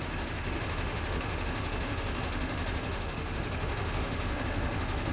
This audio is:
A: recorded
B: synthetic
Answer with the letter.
B